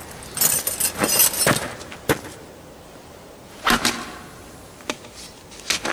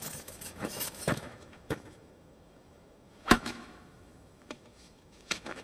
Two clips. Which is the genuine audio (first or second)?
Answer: first